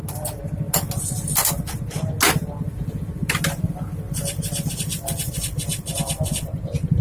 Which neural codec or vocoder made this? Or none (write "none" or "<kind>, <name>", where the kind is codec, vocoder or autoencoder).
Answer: none